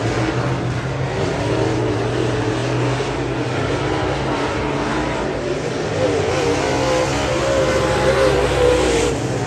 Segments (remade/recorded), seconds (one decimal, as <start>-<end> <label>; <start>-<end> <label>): 0.0-9.5 recorded